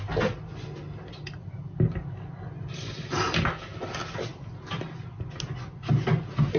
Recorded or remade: recorded